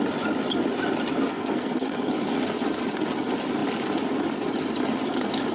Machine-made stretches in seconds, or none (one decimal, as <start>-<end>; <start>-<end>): 1.3-2.1